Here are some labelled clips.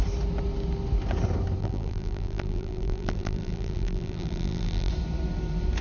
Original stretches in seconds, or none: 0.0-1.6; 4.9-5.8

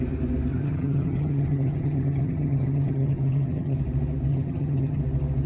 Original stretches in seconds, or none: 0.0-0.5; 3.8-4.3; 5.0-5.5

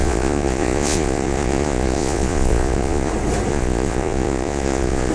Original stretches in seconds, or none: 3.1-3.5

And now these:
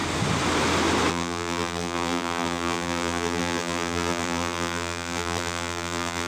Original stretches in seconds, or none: 0.0-1.1

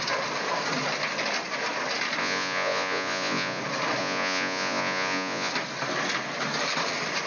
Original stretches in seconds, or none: 0.0-2.2; 3.6-4.0; 5.5-7.3

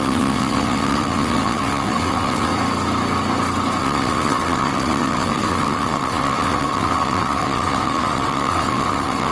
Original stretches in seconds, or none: 2.5-3.8